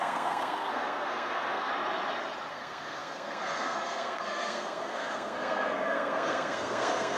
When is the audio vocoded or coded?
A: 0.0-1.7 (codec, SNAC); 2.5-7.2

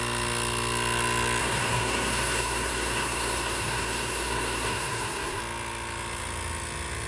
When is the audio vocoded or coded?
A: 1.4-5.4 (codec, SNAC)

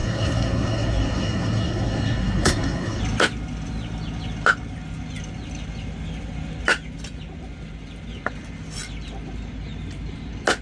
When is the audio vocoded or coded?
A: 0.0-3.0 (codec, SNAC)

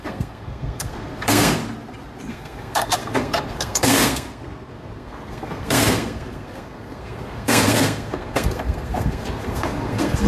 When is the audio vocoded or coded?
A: 0.0-1.6 (codec, SNAC); 2.3-10.3

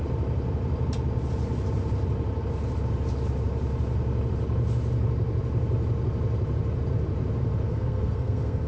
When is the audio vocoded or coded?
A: 7.7-8.7 (codec, SNAC)

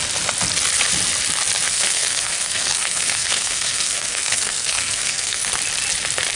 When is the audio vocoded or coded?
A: 1.7-5.5 (codec, SNAC)

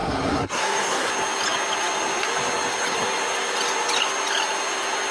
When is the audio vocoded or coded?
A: 0.0-1.1 (codec, SNAC)